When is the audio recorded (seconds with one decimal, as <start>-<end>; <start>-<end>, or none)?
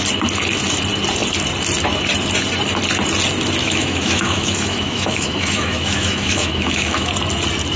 0.0-3.6; 7.1-7.8